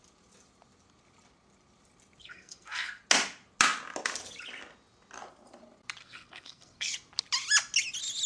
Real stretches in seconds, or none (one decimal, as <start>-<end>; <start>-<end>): 0.0-2.2; 3.0-6.0; 6.9-8.3